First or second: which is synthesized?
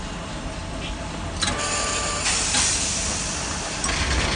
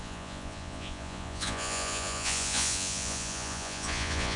second